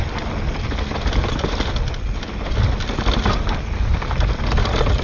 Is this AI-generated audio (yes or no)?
no